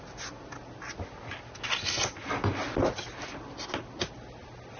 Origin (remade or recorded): recorded